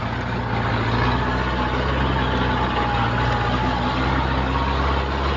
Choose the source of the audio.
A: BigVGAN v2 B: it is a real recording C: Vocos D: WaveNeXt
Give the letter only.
B